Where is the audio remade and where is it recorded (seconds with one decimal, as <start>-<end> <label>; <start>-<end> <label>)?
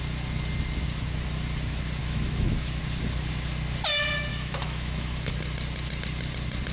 0.0-2.0 recorded; 2.0-2.8 remade; 2.8-4.3 recorded; 4.3-5.3 remade; 5.3-6.7 recorded